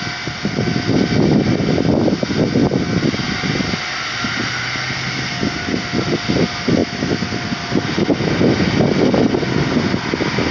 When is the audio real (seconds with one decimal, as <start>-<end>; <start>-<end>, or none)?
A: 0.0-10.5